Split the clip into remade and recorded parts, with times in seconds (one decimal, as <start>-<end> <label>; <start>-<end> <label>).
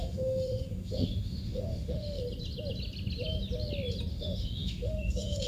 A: 0.0-2.2 remade; 2.2-4.1 recorded; 4.1-5.5 remade